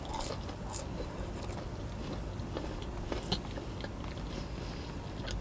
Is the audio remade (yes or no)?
no